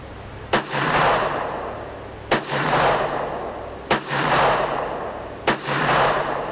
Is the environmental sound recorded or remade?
recorded